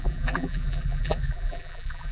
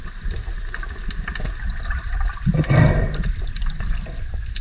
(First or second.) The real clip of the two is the second